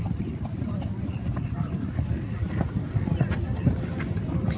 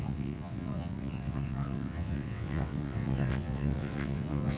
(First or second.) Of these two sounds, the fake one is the second